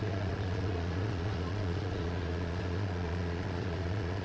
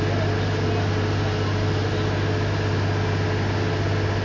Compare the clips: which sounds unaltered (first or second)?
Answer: second